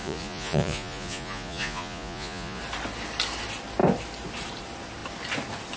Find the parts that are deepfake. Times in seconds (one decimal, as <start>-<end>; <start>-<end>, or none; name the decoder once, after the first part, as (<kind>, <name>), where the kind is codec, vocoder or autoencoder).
0.0-2.6 (vocoder, Vocos)